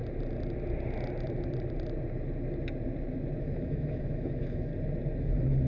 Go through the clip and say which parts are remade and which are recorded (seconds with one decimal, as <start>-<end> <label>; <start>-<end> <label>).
0.0-3.4 recorded; 3.4-4.7 remade; 4.7-5.2 recorded; 5.2-5.7 remade